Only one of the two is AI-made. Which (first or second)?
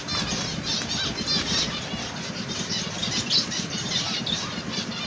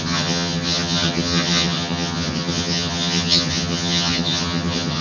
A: second